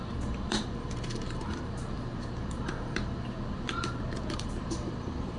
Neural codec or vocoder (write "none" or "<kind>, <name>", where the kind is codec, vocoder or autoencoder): vocoder, BigVGAN v2